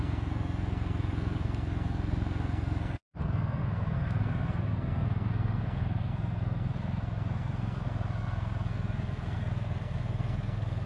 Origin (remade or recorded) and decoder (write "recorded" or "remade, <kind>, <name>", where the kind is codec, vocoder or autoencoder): remade, codec, SNAC